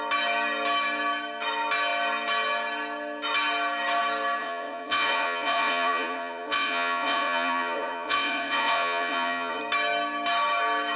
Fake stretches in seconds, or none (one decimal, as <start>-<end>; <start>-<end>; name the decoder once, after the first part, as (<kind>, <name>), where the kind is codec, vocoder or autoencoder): 4.4-9.6 (vocoder, Vocos)